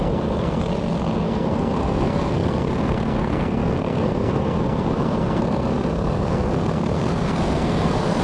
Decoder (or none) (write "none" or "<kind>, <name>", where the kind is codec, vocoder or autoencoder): codec, SNAC